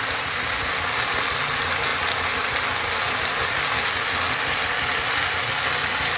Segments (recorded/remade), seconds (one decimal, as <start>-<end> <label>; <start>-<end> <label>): 0.0-6.2 recorded